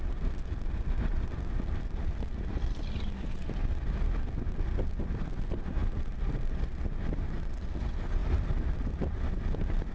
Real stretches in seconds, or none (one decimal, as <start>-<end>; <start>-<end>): 0.0-9.9